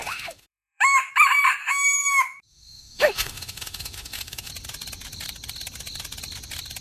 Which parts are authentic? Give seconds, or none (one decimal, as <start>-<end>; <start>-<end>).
1.1-1.6; 4.5-6.8